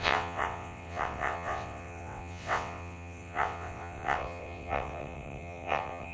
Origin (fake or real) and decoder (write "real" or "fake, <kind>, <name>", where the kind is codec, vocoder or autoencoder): fake, vocoder, WaveNeXt